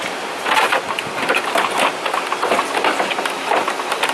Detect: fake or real real